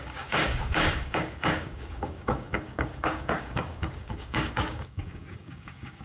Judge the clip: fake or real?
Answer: fake